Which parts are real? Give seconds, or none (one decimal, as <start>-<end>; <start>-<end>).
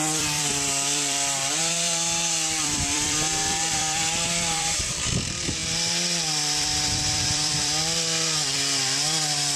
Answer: none